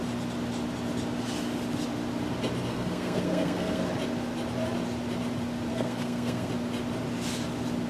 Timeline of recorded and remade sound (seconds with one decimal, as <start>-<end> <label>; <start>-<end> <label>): 0.0-2.7 recorded; 2.7-3.8 remade; 3.8-5.7 recorded; 5.7-6.5 remade; 6.5-7.9 recorded

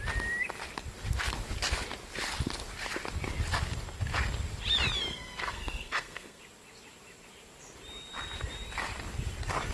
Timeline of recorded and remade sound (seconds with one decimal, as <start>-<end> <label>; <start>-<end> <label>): 0.0-5.1 recorded; 5.1-6.4 remade; 6.4-9.7 recorded